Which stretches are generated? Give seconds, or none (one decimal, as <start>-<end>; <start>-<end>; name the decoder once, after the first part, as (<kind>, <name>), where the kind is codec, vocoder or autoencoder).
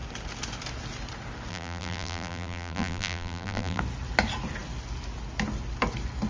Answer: 1.5-3.8 (vocoder, BigVGAN v2)